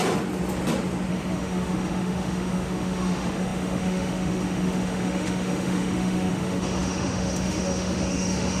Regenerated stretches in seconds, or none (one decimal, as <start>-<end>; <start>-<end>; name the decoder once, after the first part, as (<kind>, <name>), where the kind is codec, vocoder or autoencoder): 1.1-8.6 (autoencoder, DAC-VAE)